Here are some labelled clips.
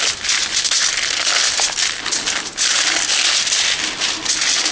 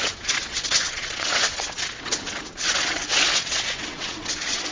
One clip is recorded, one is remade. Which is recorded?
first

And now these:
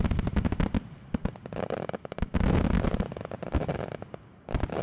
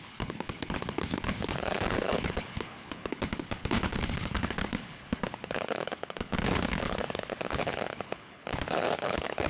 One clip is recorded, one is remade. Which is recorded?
first